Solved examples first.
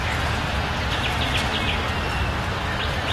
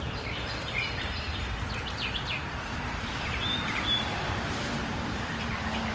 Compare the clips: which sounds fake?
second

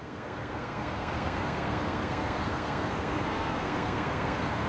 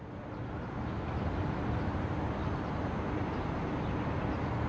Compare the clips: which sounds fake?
first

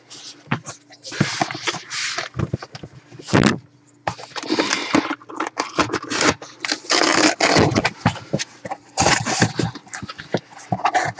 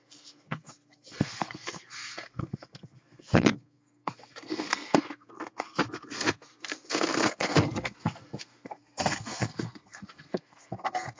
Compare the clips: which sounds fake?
second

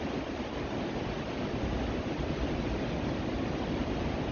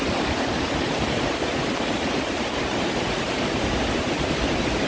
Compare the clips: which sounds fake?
second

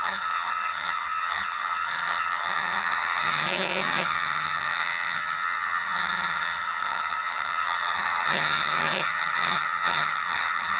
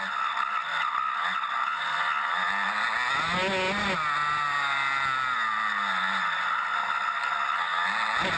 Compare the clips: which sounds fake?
first